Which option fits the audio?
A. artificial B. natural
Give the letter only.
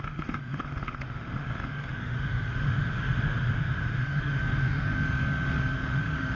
A